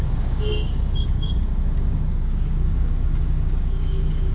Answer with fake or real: fake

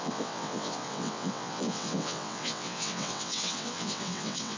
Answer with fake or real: fake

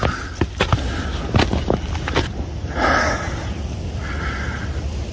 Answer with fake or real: real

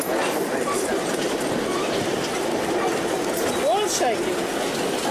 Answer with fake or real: real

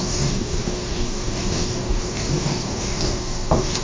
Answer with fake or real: fake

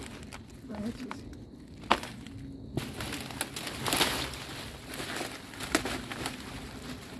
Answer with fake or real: real